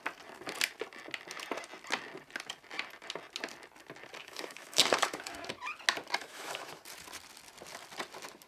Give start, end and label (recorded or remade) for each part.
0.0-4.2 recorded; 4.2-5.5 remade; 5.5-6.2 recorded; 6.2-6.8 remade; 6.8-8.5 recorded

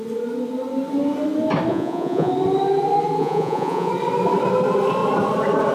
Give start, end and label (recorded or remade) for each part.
0.0-1.7 recorded; 1.7-2.3 remade; 2.3-3.2 recorded; 3.2-3.9 remade; 3.9-5.7 recorded